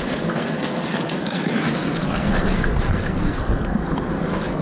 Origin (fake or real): fake